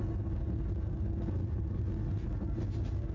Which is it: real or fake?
real